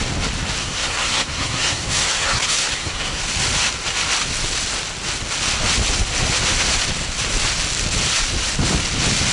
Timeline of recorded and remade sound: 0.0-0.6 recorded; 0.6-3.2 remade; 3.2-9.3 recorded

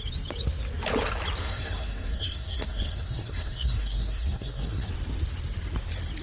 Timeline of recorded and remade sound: 0.0-1.4 recorded; 1.4-4.9 remade; 4.9-6.2 recorded

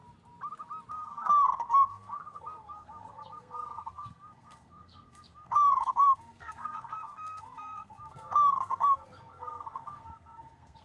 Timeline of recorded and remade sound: 0.0-0.9 recorded; 0.9-10.8 remade

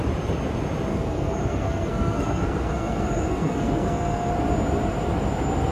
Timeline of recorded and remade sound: 0.0-0.9 recorded; 0.9-4.3 remade; 4.3-5.7 recorded